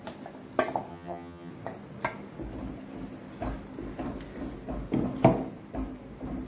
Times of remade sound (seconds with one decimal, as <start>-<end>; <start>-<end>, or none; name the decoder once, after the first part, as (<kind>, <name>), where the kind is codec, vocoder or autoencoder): 0.9-1.5 (vocoder, HiFi-GAN)